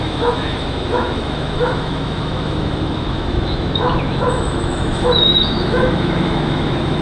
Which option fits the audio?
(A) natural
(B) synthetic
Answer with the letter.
B